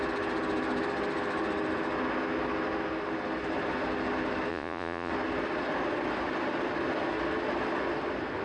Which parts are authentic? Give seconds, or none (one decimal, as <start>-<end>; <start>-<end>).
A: 0.0-4.5; 5.1-8.4